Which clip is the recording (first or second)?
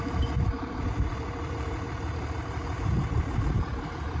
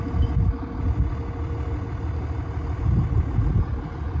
second